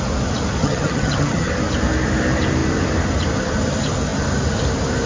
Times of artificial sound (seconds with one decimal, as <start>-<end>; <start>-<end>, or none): 0.6-1.5